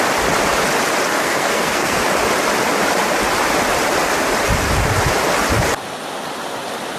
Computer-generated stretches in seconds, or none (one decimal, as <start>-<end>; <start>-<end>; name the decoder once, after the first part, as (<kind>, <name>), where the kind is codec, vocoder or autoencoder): 1.1-2.0 (codec, SNAC)